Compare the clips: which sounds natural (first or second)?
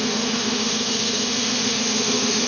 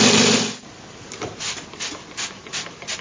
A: second